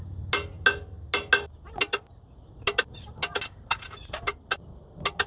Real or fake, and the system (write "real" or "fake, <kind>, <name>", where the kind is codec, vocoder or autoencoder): real